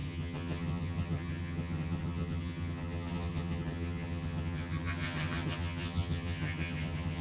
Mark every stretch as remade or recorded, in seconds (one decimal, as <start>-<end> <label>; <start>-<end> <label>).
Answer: 0.0-7.2 remade